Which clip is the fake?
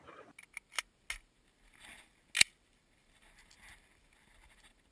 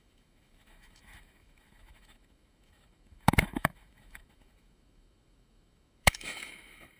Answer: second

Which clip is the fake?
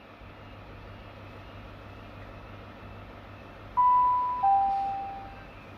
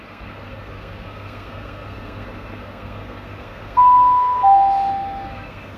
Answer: second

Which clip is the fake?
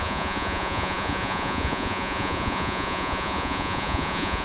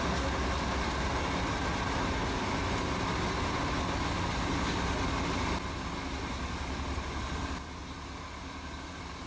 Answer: first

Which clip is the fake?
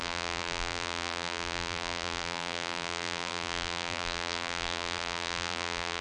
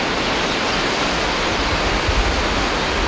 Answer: first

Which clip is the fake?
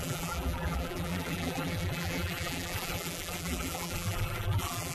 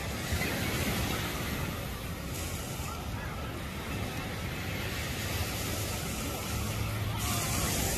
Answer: first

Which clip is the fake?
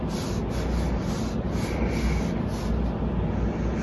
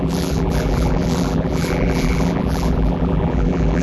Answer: second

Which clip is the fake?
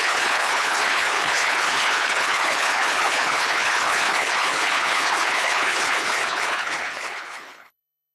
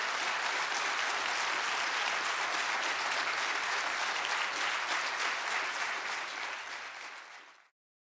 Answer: first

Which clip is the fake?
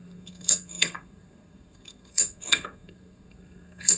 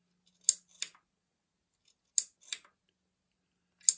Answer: first